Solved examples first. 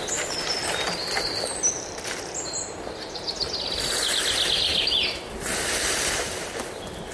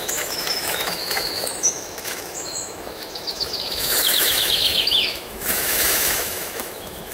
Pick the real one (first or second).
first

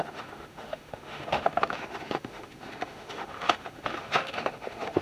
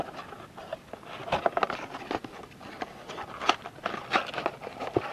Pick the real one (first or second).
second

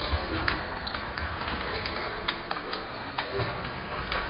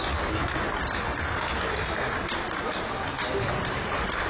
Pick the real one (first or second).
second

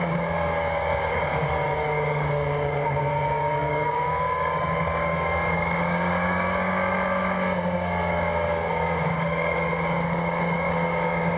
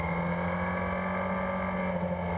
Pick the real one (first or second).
second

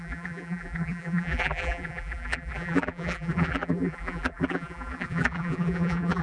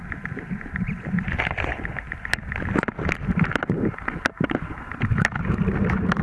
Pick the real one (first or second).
second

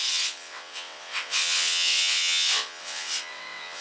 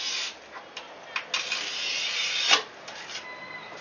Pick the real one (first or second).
second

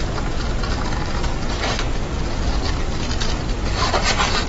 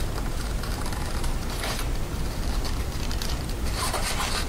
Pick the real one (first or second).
first